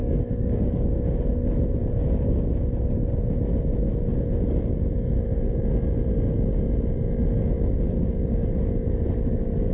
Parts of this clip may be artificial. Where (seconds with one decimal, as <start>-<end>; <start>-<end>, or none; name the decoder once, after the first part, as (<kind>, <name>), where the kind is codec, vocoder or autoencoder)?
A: 0.0-0.9 (codec, DAC)